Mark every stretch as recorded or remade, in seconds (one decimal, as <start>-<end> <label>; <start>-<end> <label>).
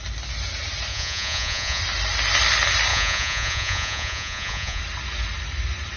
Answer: 0.0-0.9 recorded; 0.9-1.8 remade; 1.8-2.9 recorded; 2.9-4.8 remade; 4.8-6.0 recorded